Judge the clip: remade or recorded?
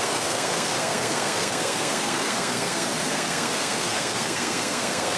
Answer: remade